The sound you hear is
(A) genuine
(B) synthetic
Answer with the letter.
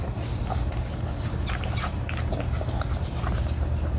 A